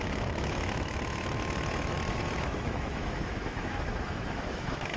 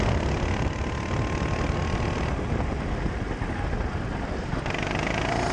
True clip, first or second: second